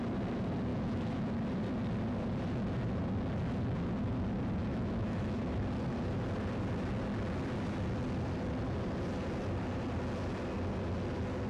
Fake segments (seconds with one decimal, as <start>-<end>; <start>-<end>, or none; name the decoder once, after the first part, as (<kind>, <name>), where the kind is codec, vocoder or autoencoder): 0.7-1.3 (autoencoder, DAC-VAE); 4.7-5.4